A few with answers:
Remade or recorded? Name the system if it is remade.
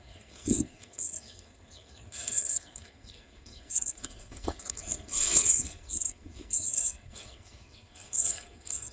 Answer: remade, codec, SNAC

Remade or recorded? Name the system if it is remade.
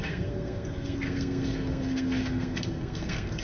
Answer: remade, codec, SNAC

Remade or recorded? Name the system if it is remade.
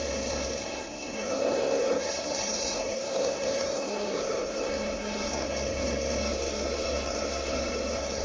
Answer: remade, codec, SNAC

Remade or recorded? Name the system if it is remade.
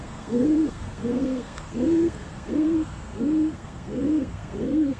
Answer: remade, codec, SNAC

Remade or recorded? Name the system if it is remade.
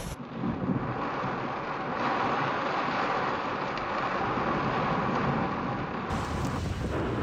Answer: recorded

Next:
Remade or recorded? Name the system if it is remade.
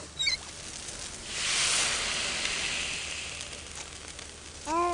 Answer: recorded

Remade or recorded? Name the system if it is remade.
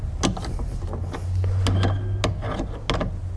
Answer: recorded